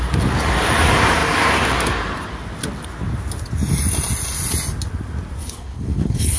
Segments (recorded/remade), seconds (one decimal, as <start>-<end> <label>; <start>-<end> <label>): 0.0-5.4 recorded; 5.4-6.4 remade